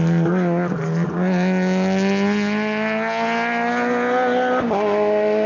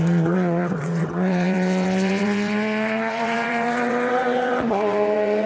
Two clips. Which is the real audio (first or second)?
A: first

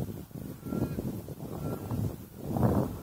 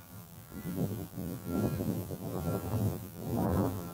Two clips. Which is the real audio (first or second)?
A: first